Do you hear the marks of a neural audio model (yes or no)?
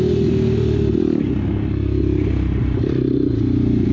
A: no